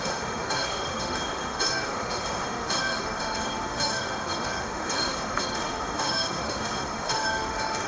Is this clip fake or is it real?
fake